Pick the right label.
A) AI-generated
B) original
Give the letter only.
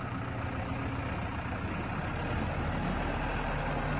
B